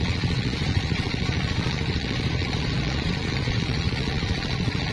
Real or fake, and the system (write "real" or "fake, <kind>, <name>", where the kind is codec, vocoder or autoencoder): fake, vocoder, Vocos